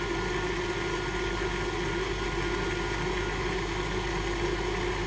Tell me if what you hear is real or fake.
real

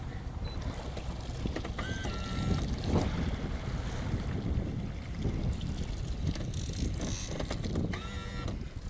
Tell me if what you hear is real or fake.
real